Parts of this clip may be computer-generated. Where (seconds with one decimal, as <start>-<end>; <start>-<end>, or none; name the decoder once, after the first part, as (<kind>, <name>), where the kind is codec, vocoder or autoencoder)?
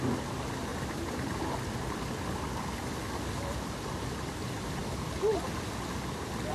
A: 0.7-1.4 (vocoder, BigVGAN v2)